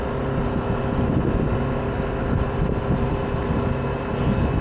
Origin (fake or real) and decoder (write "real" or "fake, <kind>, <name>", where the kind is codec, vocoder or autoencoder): real